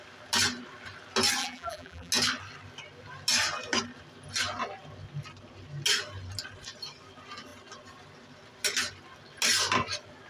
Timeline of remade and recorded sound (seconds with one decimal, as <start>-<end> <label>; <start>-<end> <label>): 0.0-1.4 recorded; 1.4-2.1 remade; 2.1-10.3 recorded